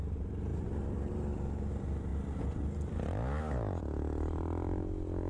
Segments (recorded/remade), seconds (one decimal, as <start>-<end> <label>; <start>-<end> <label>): 0.0-0.5 recorded; 0.5-1.7 remade; 1.7-2.1 recorded; 2.1-3.8 remade; 3.8-5.3 recorded